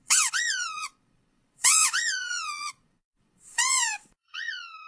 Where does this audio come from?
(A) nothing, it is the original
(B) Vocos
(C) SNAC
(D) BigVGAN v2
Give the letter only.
B